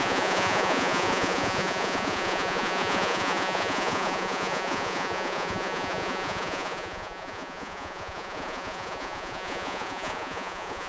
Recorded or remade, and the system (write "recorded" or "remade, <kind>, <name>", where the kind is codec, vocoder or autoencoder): remade, vocoder, Vocos